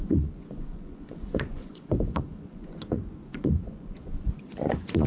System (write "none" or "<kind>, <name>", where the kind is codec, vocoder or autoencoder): vocoder, Vocos